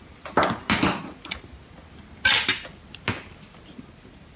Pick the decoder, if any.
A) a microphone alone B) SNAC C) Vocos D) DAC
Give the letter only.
A